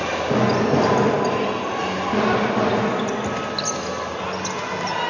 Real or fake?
real